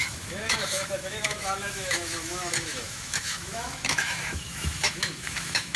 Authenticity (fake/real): fake